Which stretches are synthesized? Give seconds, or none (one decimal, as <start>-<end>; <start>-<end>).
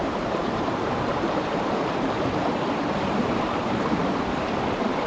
0.0-5.1